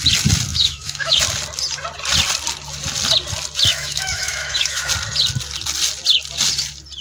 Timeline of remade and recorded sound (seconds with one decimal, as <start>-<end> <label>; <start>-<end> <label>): 0.0-0.5 recorded; 0.5-1.2 remade; 1.2-3.7 recorded; 3.7-4.9 remade; 4.9-7.0 recorded

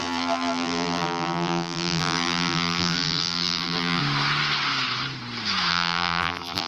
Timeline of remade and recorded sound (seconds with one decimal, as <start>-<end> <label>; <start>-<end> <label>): 0.0-4.0 remade; 4.0-5.7 recorded; 5.7-6.7 remade